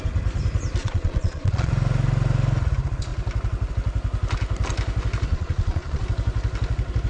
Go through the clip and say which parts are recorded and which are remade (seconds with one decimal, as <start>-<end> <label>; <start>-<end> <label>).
0.0-0.8 recorded; 0.8-1.7 remade; 1.7-5.3 recorded; 5.3-6.0 remade; 6.0-7.1 recorded